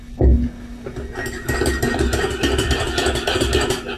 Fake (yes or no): no